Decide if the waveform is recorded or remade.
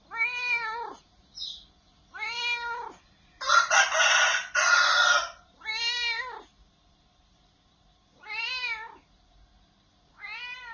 recorded